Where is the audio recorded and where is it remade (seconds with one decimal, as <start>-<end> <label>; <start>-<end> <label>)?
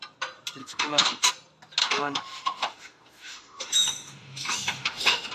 0.0-0.6 recorded; 0.6-1.3 remade; 1.3-1.8 recorded; 1.8-5.3 remade